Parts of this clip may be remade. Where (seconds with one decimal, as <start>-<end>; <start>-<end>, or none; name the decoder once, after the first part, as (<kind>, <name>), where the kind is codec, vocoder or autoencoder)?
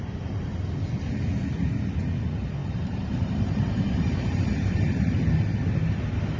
2.6-5.2 (vocoder, BigVGAN v2)